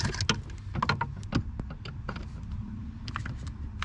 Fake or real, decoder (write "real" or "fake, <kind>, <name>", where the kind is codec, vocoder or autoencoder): real